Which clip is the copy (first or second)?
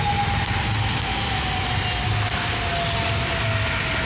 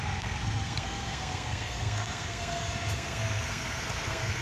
second